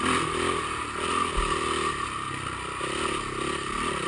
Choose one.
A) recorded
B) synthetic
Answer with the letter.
A